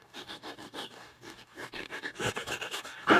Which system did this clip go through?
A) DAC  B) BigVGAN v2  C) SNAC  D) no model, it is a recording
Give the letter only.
A